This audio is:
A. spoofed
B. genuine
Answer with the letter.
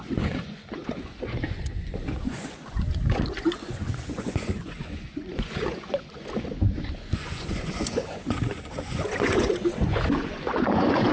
A